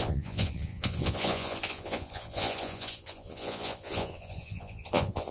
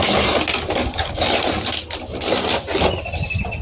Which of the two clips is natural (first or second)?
second